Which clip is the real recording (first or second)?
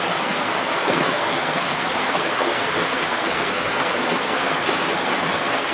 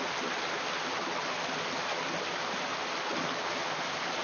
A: second